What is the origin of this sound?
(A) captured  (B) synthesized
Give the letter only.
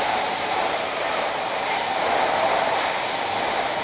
B